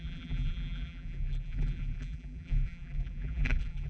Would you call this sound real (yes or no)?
no